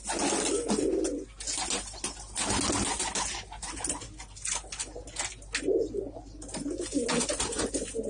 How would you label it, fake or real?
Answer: real